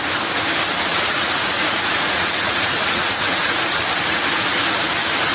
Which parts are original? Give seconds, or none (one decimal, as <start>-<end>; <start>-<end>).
0.0-0.9; 3.8-5.3